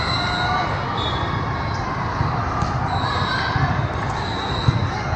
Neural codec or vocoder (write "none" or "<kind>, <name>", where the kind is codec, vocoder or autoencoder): none